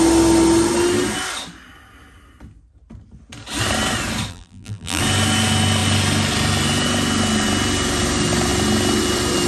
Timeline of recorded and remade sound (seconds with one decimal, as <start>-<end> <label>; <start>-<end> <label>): 0.0-4.3 recorded; 4.3-5.0 remade; 5.0-9.5 recorded